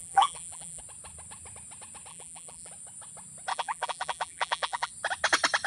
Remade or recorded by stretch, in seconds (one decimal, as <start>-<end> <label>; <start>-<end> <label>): 0.0-0.8 remade; 0.8-2.1 recorded; 2.1-2.7 remade; 2.7-3.5 recorded; 3.5-4.9 remade; 4.9-5.7 recorded